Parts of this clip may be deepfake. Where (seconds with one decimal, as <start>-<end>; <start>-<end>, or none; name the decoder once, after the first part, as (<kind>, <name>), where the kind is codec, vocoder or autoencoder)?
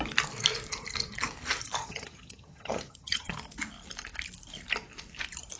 1.8-3.3 (vocoder, HiFi-GAN)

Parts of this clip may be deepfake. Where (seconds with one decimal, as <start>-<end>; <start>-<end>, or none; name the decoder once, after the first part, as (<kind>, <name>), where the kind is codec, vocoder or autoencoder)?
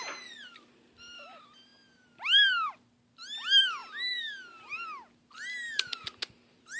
none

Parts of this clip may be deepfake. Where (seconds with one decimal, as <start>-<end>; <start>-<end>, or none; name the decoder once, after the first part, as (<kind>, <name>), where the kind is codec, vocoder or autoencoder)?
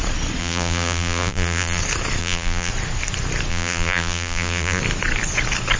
0.4-1.8 (vocoder, BigVGAN v2); 2.2-2.7; 3.5-4.8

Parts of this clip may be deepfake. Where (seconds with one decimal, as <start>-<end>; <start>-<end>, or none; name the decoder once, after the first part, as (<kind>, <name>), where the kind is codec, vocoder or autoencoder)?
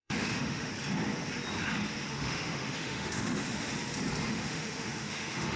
0.0-0.7 (autoencoder, DAC-VAE); 2.1-3.7; 4.3-5.6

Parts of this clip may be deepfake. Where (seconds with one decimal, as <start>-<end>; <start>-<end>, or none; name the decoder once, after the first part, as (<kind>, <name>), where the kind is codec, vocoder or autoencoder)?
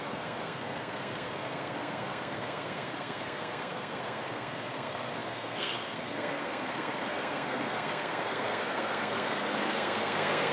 0.0-10.5 (codec, SNAC)